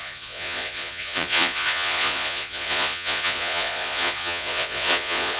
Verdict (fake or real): fake